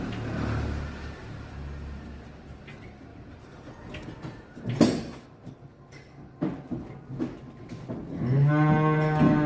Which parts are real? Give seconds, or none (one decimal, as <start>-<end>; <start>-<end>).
0.0-9.5